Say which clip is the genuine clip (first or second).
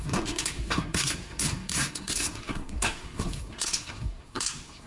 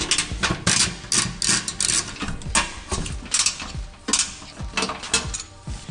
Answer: second